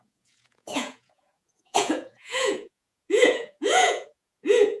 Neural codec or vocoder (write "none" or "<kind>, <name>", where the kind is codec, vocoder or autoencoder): vocoder, Vocos